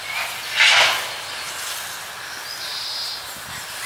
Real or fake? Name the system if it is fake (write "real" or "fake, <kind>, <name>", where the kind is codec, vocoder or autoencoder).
real